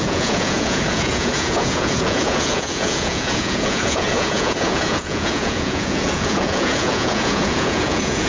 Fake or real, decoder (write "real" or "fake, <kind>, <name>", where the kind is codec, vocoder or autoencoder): fake, vocoder, Vocos